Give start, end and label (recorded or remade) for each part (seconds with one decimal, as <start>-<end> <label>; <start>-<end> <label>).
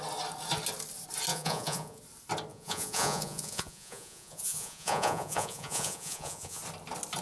0.0-1.3 recorded; 1.3-2.0 remade; 2.0-2.5 recorded; 2.5-6.6 remade; 6.6-7.2 recorded